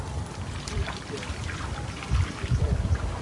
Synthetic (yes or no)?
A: yes